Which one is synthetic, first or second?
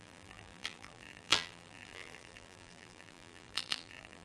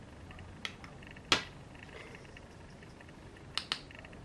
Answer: first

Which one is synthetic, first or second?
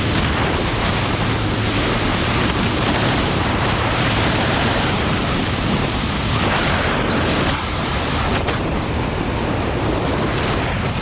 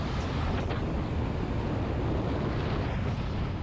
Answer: first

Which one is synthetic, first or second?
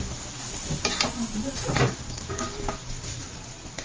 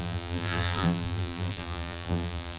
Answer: second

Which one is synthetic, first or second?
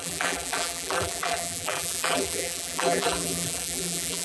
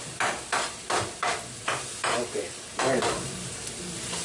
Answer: first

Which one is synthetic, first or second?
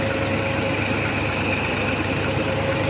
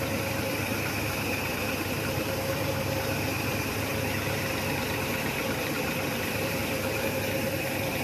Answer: second